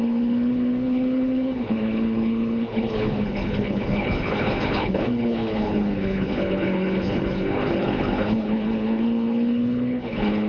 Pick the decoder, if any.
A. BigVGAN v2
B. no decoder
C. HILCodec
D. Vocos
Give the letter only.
C